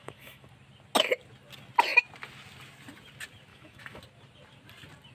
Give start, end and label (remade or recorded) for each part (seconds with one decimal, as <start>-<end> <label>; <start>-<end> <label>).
0.0-0.5 remade; 0.5-3.5 recorded; 3.5-4.0 remade; 4.0-5.1 recorded